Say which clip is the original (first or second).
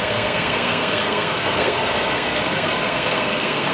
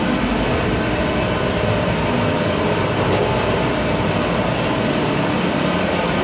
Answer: second